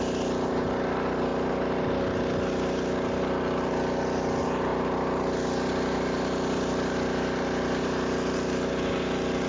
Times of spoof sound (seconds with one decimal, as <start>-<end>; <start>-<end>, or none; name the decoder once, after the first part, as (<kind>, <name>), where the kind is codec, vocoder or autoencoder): none